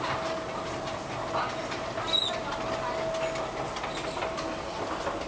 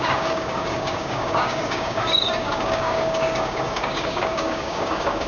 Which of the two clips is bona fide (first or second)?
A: first